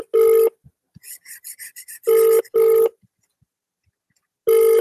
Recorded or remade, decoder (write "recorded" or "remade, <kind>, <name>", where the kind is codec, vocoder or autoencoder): recorded